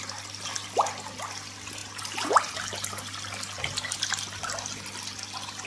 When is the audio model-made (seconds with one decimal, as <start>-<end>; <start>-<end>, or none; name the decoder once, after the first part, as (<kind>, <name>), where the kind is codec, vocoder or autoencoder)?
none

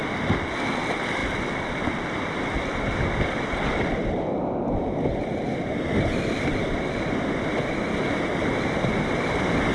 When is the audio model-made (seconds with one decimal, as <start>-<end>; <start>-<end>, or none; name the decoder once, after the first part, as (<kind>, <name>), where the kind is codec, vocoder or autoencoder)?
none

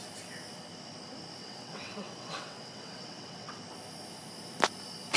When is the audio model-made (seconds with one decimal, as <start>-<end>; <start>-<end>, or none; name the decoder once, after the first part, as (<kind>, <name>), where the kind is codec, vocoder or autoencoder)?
1.4-3.6 (vocoder, WaveNeXt)

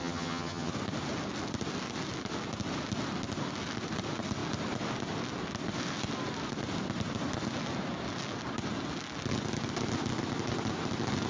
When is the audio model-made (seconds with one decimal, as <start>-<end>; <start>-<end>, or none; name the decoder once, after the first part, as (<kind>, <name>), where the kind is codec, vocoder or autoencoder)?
0.0-0.7 (vocoder, HiFi-GAN)

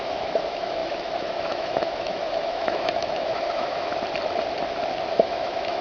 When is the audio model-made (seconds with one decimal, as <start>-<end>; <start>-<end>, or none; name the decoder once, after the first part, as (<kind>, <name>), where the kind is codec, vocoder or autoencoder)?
0.0-3.9 (autoencoder, DAC-VAE); 5.1-5.8

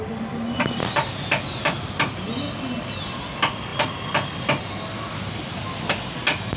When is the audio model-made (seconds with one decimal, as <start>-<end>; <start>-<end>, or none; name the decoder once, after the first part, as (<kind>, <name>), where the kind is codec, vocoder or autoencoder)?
none